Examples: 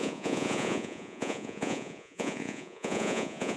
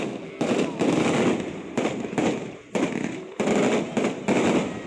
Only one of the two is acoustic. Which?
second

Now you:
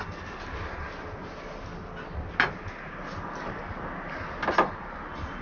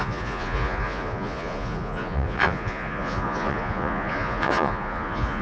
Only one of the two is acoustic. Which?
first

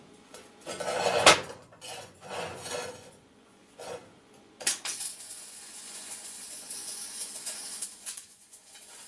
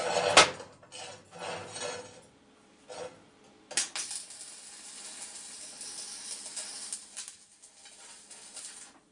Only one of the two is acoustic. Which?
second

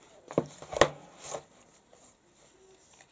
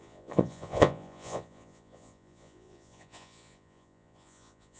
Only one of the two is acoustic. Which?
first